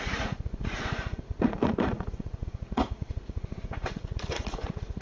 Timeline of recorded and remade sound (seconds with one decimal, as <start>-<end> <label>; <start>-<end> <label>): 0.0-5.0 remade